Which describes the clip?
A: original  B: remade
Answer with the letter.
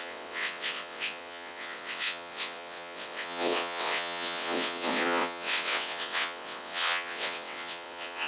B